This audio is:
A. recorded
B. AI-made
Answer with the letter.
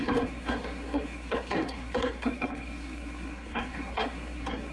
B